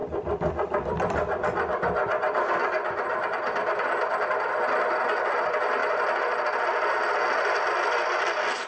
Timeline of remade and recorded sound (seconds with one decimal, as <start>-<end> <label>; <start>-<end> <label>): 0.0-5.0 remade; 5.0-8.7 recorded